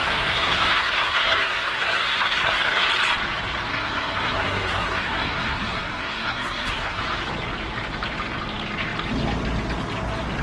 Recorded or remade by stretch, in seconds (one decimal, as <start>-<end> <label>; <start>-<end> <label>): 0.0-2.9 remade; 2.9-3.7 recorded; 3.7-7.0 remade; 7.0-10.4 recorded